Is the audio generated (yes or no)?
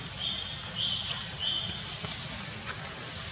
no